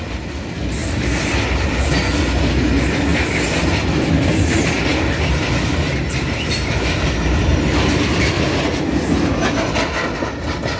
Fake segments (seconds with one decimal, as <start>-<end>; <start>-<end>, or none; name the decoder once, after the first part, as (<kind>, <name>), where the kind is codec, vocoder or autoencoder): 0.8-1.9 (vocoder, BigVGAN v2); 3.1-4.1